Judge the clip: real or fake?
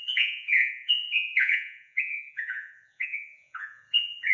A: fake